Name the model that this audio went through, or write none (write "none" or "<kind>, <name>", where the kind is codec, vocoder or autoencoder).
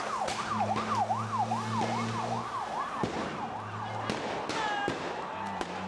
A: none